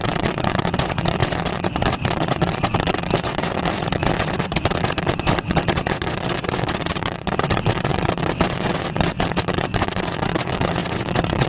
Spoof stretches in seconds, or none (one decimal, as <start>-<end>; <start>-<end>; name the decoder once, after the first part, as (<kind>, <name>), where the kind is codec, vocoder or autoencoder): 0.0-11.5 (vocoder, WaveNeXt)